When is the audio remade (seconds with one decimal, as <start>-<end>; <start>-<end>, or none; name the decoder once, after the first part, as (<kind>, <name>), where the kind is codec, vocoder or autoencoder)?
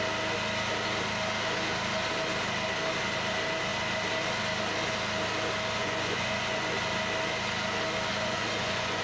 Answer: 5.8-6.7 (vocoder, Vocos); 8.1-9.0